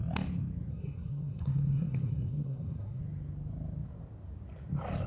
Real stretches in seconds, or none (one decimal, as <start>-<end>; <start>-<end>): 0.0-0.7; 3.0-5.1